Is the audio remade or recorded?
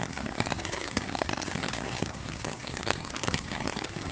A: remade